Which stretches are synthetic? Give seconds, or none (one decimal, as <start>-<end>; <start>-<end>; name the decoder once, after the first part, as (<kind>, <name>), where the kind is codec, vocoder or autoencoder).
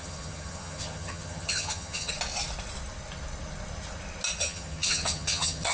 0.0-2.1 (vocoder, HiFi-GAN); 4.4-5.7